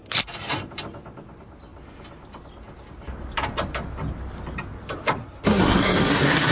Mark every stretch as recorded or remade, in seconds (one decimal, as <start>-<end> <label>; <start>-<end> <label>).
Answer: 0.0-5.2 recorded; 5.2-6.5 remade